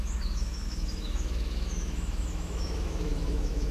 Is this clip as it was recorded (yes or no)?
no